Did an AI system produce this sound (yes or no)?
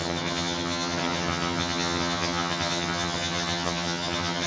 yes